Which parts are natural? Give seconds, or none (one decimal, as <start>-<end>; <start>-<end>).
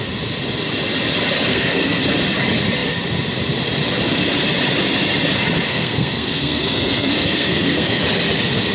0.0-1.5; 2.0-5.7; 8.0-8.7